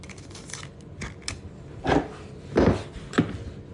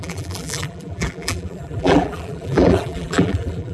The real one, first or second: first